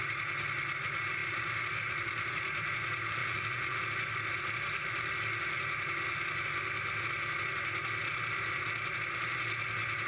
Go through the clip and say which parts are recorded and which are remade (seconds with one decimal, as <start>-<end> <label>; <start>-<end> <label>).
0.0-3.2 recorded; 3.2-3.8 remade; 3.8-10.1 recorded